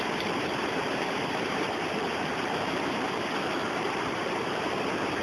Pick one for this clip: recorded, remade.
remade